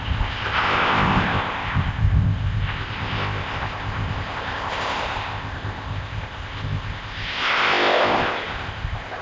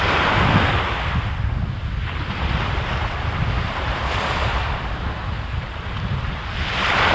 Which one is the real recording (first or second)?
second